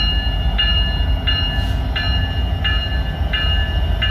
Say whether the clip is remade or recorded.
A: recorded